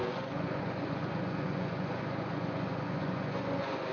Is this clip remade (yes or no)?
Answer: yes